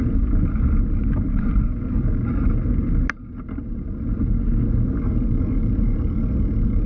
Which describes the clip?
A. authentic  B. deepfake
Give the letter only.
A